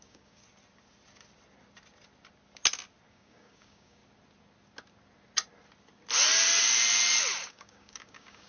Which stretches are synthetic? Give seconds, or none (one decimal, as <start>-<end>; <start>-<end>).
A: 0.0-0.4; 3.1-4.0; 7.5-8.5